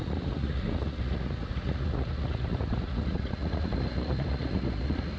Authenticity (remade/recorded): remade